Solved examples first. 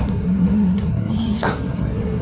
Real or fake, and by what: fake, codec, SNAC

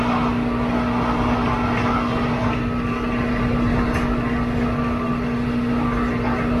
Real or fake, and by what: real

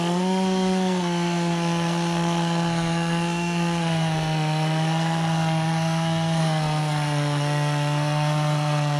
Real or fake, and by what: fake, codec, SNAC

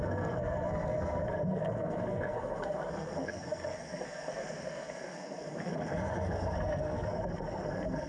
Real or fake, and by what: fake, codec, SNAC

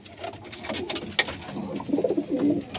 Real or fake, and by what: real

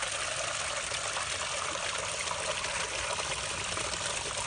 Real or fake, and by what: real